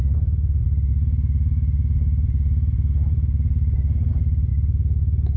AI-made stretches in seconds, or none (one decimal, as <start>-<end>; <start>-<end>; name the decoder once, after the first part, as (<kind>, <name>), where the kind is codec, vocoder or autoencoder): none